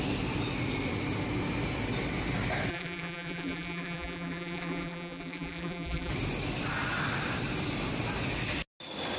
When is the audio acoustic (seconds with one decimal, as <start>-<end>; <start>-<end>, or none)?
0.0-2.7; 6.1-9.2